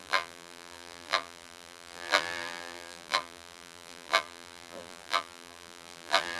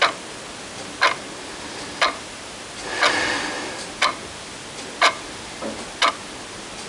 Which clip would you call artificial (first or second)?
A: first